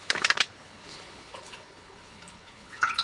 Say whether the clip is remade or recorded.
remade